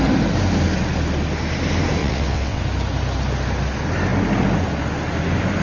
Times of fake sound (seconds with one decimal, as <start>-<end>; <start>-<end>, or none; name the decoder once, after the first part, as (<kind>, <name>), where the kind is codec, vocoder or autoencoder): 2.0-2.6 (vocoder, WaveNeXt)